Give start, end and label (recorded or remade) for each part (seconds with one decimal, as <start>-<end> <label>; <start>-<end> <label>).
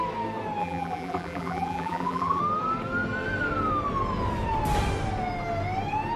0.0-0.6 recorded; 0.6-2.4 remade; 2.4-6.2 recorded